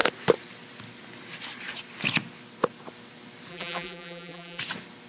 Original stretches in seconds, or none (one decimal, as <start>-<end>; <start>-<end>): 0.0-3.5; 4.6-5.1